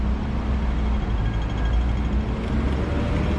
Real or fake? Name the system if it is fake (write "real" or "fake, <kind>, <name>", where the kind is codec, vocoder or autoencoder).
real